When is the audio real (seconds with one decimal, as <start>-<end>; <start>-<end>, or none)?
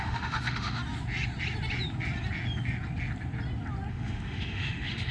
0.8-3.9